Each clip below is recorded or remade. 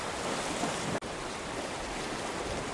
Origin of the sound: recorded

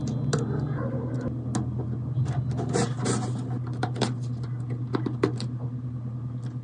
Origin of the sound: recorded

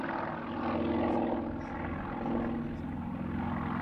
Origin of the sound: recorded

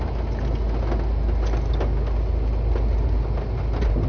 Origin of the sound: recorded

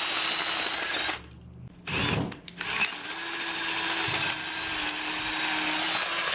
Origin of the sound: recorded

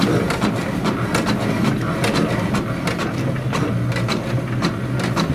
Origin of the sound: recorded